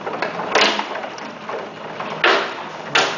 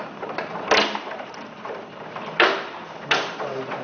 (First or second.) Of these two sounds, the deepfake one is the second